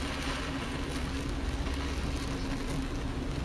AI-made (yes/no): no